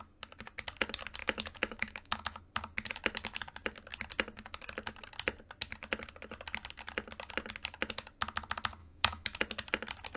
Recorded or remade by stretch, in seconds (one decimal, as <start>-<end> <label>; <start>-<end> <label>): 0.0-1.2 recorded; 1.2-2.4 remade; 2.4-8.8 recorded; 8.8-9.4 remade; 9.4-10.2 recorded